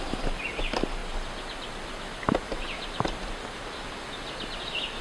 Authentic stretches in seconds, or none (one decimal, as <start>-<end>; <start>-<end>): 0.0-5.0